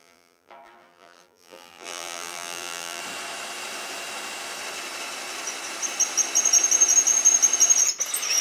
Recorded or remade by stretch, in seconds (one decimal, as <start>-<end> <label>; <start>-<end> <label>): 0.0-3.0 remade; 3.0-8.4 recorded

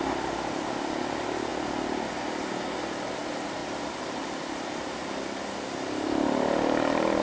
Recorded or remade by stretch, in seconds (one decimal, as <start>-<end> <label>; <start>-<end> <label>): 0.0-7.2 recorded

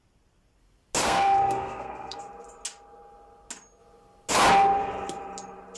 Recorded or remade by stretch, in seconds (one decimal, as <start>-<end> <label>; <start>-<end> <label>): 0.0-1.0 recorded; 1.0-2.2 remade; 2.2-5.8 recorded

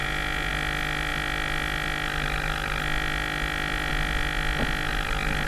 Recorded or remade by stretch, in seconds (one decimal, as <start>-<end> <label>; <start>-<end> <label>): 0.0-0.5 remade; 0.5-5.5 recorded

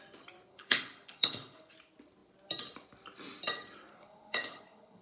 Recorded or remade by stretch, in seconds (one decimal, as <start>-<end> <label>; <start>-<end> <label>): 0.0-0.5 recorded; 0.5-1.7 remade; 1.7-3.9 recorded; 3.9-5.0 remade